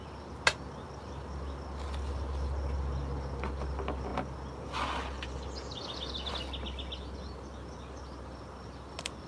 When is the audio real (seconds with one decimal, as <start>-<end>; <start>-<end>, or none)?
0.0-9.3